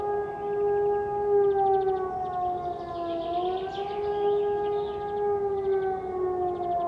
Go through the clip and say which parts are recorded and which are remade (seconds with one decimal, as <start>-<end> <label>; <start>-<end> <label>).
0.0-4.1 recorded; 4.1-4.9 remade; 4.9-6.9 recorded